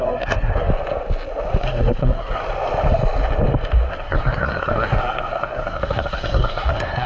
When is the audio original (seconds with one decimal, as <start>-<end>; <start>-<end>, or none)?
0.7-1.6; 2.4-3.9